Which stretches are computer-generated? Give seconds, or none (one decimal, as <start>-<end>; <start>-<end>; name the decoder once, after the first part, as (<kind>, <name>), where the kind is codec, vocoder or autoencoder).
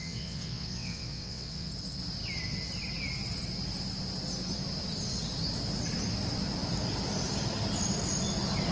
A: 0.0-1.7 (vocoder, WaveNeXt)